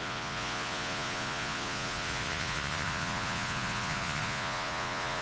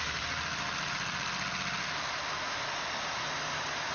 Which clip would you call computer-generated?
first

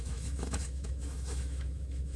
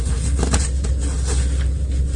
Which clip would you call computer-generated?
first